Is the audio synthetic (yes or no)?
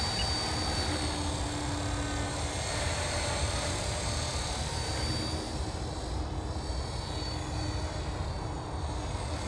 no